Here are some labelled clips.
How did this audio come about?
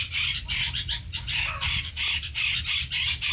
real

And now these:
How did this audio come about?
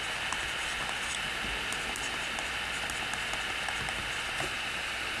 real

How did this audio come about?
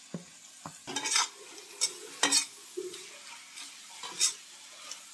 real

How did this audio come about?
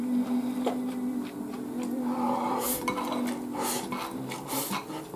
real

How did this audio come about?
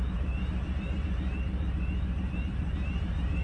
fake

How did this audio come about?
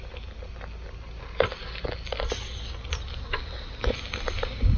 real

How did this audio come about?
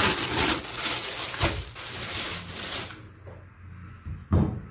real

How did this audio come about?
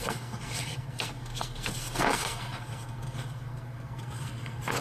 fake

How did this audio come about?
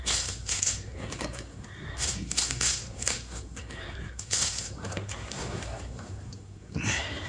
fake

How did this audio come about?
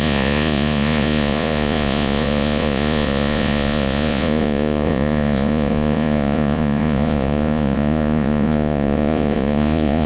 fake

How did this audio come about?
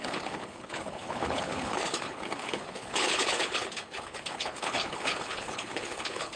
fake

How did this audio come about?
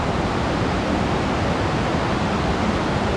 real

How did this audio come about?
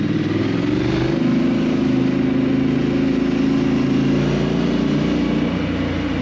real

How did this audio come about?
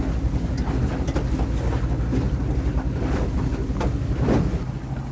real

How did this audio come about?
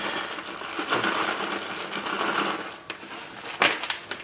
real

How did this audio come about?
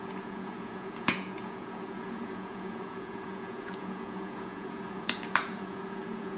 fake